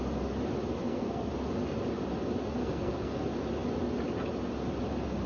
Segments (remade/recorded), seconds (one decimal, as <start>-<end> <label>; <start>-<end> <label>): 0.0-0.8 recorded; 0.8-1.3 remade; 1.3-2.6 recorded; 2.6-3.2 remade; 3.2-5.3 recorded